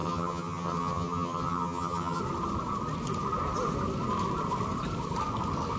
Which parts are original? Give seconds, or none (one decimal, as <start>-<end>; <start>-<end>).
2.2-5.8